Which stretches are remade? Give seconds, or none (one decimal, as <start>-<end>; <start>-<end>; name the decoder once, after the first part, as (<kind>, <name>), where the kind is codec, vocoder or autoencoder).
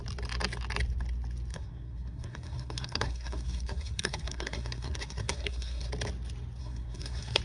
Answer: 1.5-5.9 (codec, SNAC); 6.6-7.4